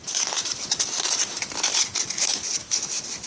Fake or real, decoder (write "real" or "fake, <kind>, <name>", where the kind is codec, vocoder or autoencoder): real